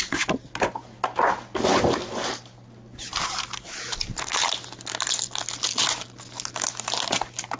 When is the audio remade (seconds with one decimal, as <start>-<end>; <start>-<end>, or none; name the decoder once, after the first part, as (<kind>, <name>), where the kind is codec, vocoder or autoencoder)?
none